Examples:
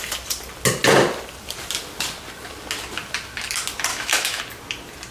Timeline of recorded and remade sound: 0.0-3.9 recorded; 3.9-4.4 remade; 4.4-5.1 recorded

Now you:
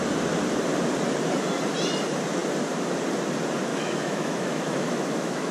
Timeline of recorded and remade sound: 0.0-3.7 recorded; 3.7-5.5 remade